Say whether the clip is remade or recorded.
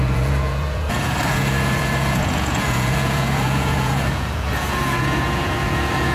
remade